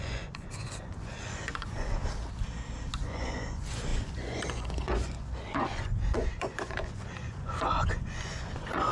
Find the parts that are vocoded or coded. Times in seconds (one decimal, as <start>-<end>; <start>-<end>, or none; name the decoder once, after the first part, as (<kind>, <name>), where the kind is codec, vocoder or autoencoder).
0.0-2.0 (vocoder, Vocos); 3.0-8.9